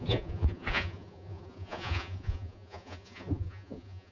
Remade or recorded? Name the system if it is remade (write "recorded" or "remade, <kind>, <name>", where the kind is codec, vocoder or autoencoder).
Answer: remade, vocoder, Vocos